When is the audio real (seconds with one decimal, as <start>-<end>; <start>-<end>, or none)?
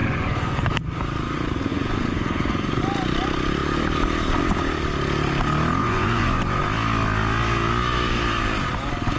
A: 0.7-1.7; 2.8-5.8; 6.6-9.2